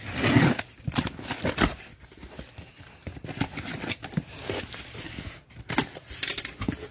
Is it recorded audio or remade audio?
recorded